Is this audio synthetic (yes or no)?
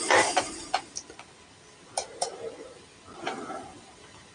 yes